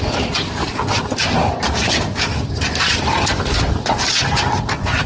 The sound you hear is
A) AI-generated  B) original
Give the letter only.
B